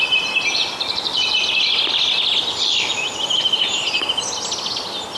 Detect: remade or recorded recorded